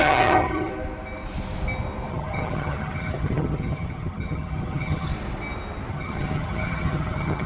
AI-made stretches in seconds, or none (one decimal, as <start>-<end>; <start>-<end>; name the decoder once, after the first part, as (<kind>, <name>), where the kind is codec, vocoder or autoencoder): 0.0-0.7 (vocoder, HiFi-GAN); 2.1-5.1; 5.9-7.5